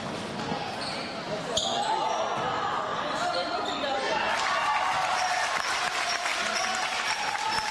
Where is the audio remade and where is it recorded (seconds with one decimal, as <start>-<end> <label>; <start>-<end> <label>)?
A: 0.0-2.9 recorded; 2.9-3.8 remade; 3.8-6.3 recorded; 6.3-7.7 remade